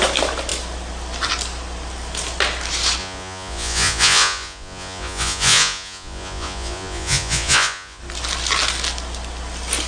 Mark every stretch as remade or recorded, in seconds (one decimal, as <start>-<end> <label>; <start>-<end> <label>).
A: 0.0-3.0 recorded; 3.0-8.0 remade; 8.0-9.9 recorded